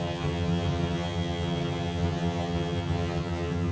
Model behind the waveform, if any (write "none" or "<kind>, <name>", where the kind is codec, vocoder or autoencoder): vocoder, HiFi-GAN